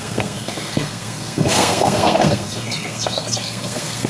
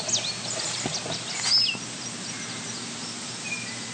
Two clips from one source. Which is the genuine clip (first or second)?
second